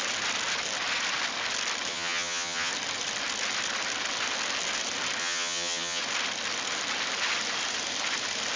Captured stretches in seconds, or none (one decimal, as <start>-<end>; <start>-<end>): 0.0-1.9; 2.7-5.2; 6.0-8.6